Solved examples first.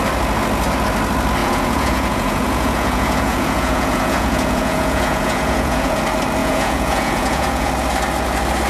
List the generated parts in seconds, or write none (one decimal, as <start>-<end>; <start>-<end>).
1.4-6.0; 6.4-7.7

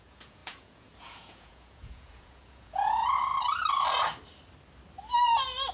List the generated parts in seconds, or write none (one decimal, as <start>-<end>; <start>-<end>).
0.0-3.3

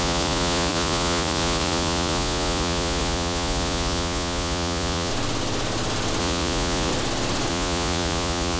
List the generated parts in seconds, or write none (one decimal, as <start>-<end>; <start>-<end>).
0.0-5.1; 6.2-6.9; 7.5-8.6